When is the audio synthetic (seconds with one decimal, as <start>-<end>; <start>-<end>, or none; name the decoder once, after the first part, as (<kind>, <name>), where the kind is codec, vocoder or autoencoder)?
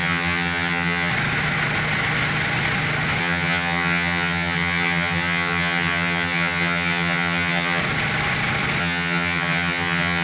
0.0-1.1 (vocoder, HiFi-GAN); 3.2-7.8; 8.8-10.2